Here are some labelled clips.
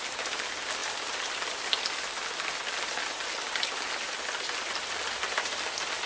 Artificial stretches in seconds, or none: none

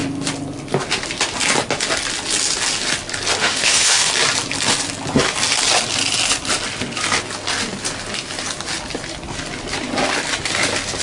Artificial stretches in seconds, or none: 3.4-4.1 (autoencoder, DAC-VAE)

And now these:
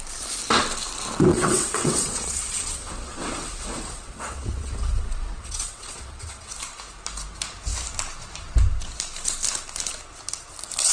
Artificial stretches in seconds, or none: 1.3-6.5 (vocoder, WaveNeXt)

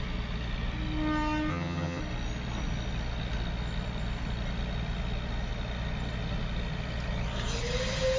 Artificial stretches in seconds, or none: 1.5-2.0 (vocoder, HiFi-GAN)

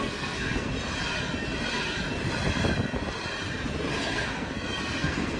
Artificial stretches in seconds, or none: 0.0-0.7 (codec, SNAC); 3.9-5.4

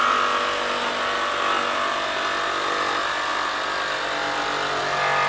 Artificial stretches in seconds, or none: none